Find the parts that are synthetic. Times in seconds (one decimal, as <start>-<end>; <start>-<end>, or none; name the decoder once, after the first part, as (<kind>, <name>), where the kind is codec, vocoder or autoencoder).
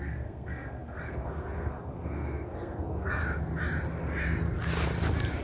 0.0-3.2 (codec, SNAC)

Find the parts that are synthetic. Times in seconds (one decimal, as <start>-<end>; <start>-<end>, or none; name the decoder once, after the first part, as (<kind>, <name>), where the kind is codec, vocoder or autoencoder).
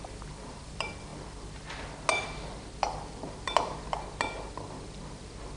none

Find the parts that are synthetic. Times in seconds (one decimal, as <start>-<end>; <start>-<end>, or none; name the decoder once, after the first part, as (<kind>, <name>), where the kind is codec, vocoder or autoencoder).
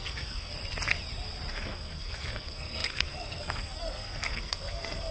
0.0-0.5 (codec, SNAC); 1.5-5.1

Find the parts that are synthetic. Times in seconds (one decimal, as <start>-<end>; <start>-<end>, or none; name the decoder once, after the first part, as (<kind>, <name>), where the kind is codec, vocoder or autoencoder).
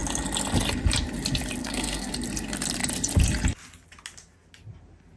1.6-2.1 (codec, SNAC)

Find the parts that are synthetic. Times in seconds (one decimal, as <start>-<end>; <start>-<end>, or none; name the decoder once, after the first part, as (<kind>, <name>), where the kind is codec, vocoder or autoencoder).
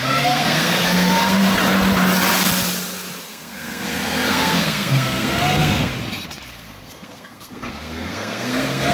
0.0-1.4 (codec, SNAC); 3.3-5.9; 6.5-8.9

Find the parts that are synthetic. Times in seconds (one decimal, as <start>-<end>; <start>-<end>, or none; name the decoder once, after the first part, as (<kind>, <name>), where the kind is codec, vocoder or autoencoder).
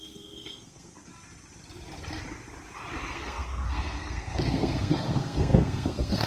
0.0-1.1 (codec, SNAC); 3.1-6.3